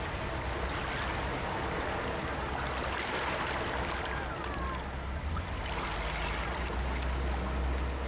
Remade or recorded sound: recorded